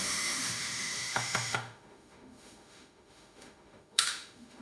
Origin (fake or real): fake